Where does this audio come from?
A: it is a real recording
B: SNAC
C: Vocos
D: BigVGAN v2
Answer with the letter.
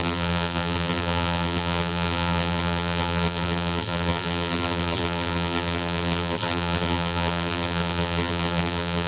D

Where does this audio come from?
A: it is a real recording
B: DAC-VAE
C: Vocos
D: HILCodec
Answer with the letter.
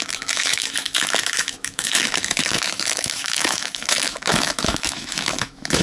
B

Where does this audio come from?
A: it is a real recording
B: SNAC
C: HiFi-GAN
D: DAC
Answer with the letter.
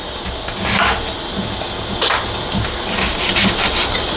A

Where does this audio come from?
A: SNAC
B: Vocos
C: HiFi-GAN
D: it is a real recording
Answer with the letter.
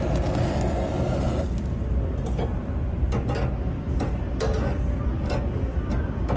D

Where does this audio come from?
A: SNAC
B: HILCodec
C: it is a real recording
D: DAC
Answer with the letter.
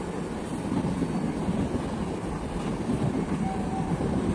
C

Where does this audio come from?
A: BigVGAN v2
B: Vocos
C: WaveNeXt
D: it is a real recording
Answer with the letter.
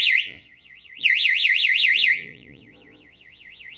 B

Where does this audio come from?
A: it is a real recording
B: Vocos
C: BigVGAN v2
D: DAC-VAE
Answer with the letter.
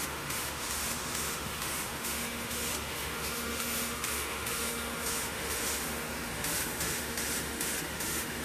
D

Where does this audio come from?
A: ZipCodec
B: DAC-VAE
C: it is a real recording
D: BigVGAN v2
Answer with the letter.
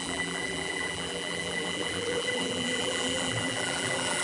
D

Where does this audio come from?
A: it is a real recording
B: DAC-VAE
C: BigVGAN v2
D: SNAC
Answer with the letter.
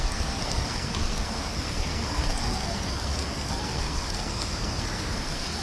D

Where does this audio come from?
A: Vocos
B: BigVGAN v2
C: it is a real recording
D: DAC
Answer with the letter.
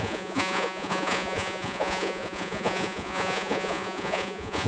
A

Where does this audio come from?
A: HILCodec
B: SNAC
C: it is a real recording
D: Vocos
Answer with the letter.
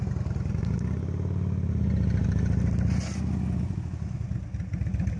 C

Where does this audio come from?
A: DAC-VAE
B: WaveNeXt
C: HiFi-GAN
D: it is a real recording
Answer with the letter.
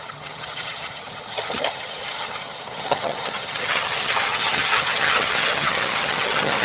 C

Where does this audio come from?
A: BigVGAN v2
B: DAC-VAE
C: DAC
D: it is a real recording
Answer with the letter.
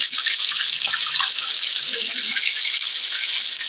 B